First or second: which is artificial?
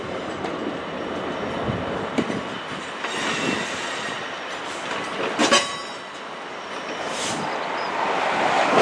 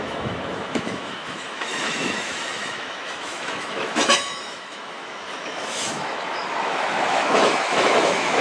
second